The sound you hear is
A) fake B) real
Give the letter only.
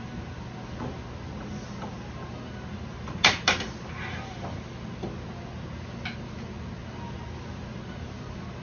B